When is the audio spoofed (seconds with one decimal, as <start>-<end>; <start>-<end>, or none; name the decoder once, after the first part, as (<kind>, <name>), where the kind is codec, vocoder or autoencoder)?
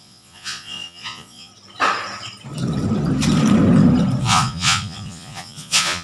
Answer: 0.0-1.5 (vocoder, Vocos); 4.2-6.0